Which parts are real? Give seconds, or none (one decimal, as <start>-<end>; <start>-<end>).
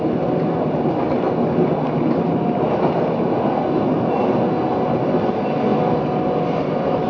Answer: 0.0-7.1